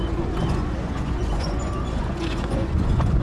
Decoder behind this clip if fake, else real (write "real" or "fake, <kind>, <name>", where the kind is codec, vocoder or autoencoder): fake, vocoder, Vocos